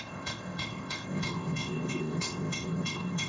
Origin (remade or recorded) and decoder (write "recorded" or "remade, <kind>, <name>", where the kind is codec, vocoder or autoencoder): remade, codec, ZipCodec